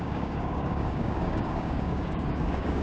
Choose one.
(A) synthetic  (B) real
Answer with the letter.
A